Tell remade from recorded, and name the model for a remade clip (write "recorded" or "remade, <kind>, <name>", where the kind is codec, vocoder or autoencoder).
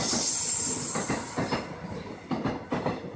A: recorded